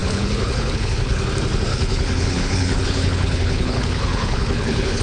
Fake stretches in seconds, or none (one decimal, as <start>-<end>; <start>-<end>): 0.0-1.2; 1.7-5.0